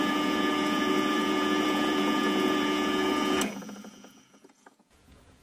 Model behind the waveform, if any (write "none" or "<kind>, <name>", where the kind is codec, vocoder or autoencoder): vocoder, Vocos